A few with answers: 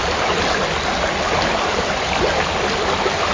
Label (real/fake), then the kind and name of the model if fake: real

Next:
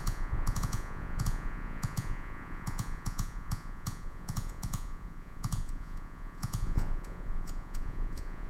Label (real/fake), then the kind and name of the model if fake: fake, vocoder, Vocos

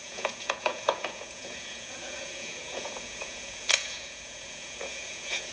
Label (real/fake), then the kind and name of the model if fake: fake, vocoder, Vocos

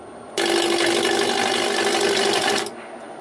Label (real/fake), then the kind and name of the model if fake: real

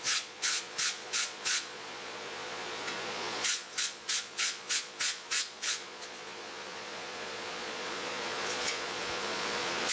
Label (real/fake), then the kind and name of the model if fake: fake, vocoder, Vocos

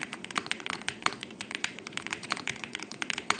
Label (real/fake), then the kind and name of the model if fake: fake, vocoder, Vocos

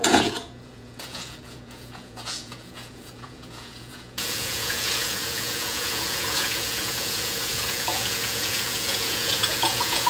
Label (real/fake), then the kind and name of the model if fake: fake, vocoder, Vocos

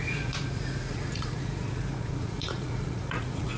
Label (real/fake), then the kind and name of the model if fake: fake, vocoder, Vocos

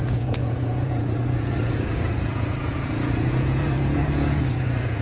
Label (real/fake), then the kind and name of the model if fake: fake, vocoder, Vocos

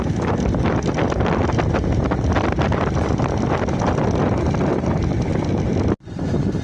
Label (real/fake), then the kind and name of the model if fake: real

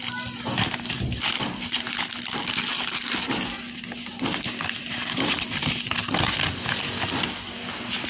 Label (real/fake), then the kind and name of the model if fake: real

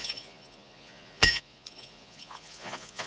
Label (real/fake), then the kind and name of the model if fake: fake, vocoder, Vocos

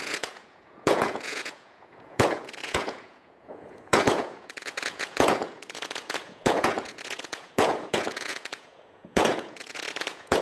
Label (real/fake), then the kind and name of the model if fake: fake, vocoder, Vocos